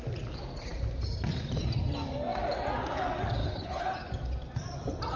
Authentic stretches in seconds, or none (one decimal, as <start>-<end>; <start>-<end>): 0.0-3.4; 4.1-5.2